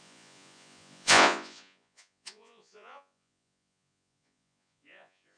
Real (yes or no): no